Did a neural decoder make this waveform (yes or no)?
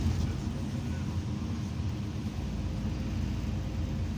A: no